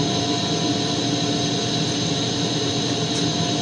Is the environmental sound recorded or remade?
recorded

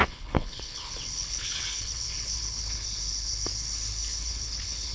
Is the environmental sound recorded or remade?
remade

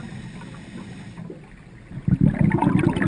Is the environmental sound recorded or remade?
recorded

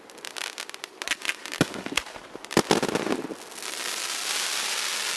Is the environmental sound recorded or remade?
recorded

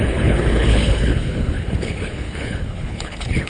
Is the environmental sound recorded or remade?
remade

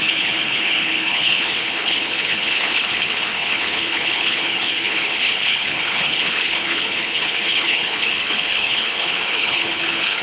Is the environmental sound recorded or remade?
remade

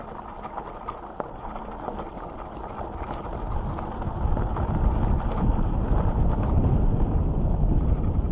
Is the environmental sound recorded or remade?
recorded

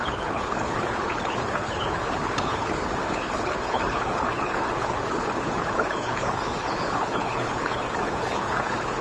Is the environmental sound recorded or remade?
remade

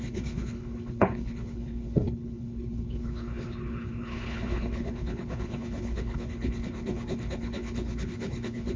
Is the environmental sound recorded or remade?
remade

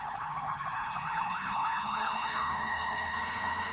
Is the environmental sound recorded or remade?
remade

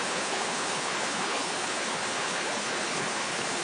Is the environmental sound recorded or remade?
remade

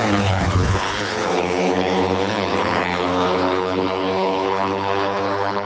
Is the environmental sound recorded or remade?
remade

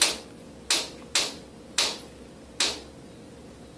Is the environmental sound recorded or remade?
recorded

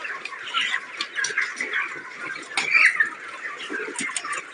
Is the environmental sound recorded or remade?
recorded